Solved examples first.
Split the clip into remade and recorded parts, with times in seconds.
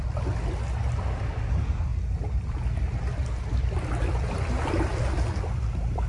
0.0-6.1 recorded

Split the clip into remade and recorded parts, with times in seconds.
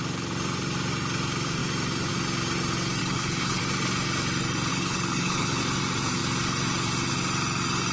0.0-3.0 recorded; 3.0-3.6 remade; 3.6-4.7 recorded; 4.7-5.6 remade; 5.6-7.9 recorded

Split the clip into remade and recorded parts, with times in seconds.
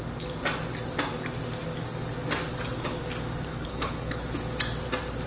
0.0-3.5 recorded; 3.5-4.2 remade; 4.2-5.3 recorded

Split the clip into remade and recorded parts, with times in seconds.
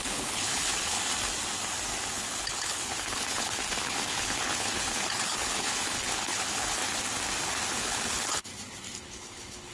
0.0-1.1 remade; 1.1-2.1 recorded; 2.1-6.8 remade; 6.8-7.7 recorded; 7.7-8.5 remade; 8.5-9.0 recorded; 9.0-9.7 remade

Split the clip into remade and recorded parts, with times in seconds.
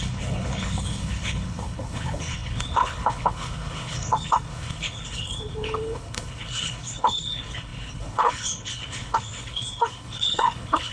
0.0-10.9 remade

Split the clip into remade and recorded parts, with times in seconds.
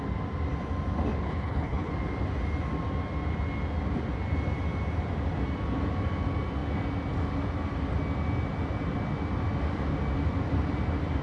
0.0-1.2 recorded; 1.2-1.9 remade; 1.9-11.2 recorded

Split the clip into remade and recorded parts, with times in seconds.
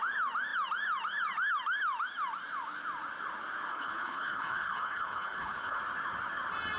0.0-3.7 recorded; 3.7-5.8 remade; 5.8-6.8 recorded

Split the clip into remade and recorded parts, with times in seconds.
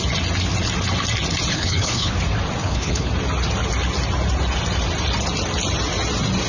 0.0-1.5 recorded; 1.5-2.1 remade; 2.1-2.6 recorded; 2.6-3.1 remade; 3.1-6.5 recorded